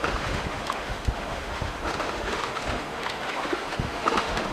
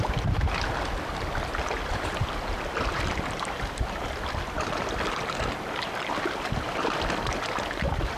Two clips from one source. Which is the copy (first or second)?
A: first